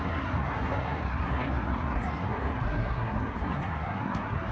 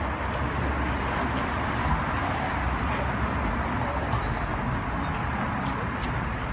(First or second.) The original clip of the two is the second